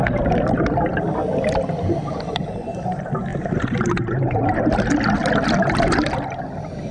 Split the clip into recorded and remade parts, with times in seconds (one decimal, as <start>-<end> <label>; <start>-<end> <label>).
0.0-2.0 recorded; 2.0-2.6 remade; 2.6-3.3 recorded; 3.3-4.6 remade; 4.6-6.9 recorded